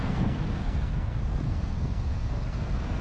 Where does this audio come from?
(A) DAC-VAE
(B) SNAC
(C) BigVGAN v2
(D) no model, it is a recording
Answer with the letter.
B